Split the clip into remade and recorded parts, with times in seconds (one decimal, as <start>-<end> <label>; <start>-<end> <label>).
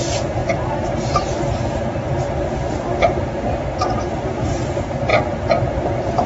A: 0.0-0.4 remade; 0.4-4.2 recorded; 4.2-5.1 remade; 5.1-5.6 recorded; 5.6-6.3 remade